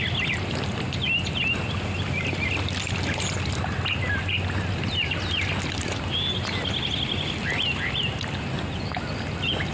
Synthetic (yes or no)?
no